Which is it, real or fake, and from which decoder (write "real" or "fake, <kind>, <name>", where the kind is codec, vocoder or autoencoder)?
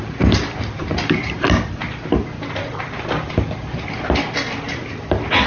real